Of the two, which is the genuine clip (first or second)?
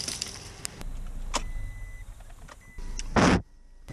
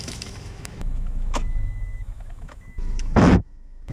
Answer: first